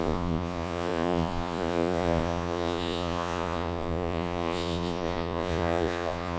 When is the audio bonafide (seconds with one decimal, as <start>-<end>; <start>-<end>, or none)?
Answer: none